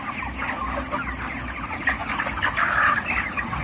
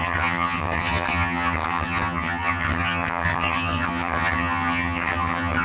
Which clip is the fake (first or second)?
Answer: second